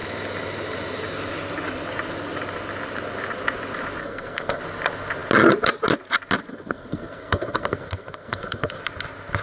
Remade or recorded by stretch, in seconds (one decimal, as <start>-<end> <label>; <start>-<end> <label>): 0.0-4.0 recorded; 4.0-4.6 remade; 4.6-6.5 recorded; 6.5-8.8 remade; 8.8-9.4 recorded